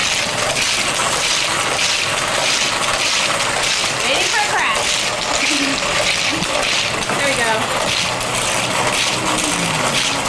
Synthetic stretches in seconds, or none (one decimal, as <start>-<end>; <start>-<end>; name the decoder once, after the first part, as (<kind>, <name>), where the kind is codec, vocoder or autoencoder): none